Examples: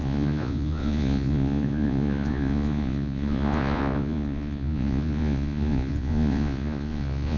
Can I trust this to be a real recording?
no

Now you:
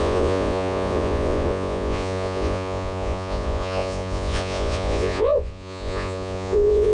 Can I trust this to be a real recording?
no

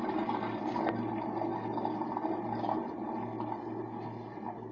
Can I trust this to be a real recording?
yes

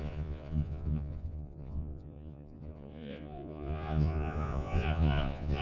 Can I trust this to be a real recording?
no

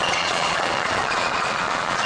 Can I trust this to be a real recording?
no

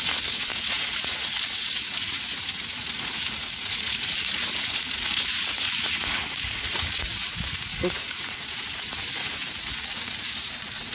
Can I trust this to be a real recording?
no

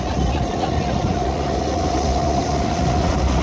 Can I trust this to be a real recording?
no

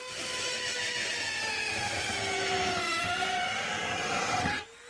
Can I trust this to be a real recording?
yes